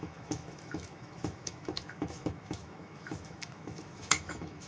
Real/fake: fake